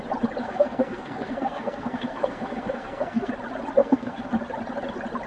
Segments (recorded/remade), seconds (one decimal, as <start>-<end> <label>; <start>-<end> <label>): 0.0-0.4 recorded; 0.4-3.3 remade; 3.3-3.8 recorded; 3.8-4.3 remade; 4.3-5.3 recorded

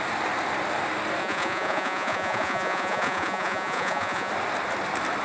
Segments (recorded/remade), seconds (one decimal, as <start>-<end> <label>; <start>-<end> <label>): 0.0-1.2 recorded; 1.2-4.3 remade; 4.3-5.2 recorded

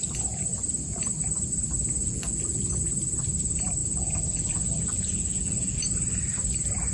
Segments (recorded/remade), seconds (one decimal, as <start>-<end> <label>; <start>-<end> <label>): 0.0-2.0 recorded; 2.0-2.6 remade; 2.6-3.8 recorded; 3.8-5.8 remade; 5.8-6.9 recorded